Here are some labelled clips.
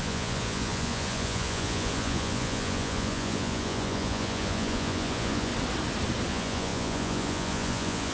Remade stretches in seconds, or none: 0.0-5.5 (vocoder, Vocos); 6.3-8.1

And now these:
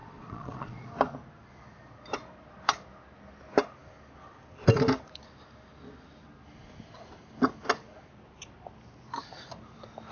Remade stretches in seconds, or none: 0.0-0.9 (vocoder, Vocos)